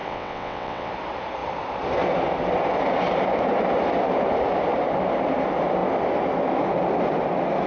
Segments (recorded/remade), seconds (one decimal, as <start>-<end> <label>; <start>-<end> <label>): 0.0-0.9 remade; 0.9-7.7 recorded